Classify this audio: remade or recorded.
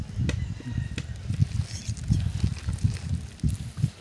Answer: recorded